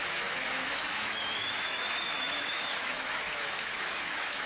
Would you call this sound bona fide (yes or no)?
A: no